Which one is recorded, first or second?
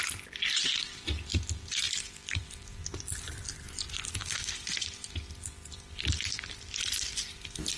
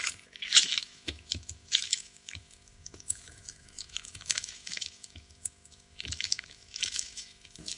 first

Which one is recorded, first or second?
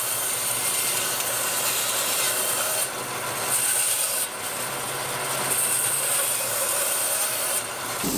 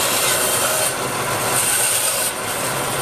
first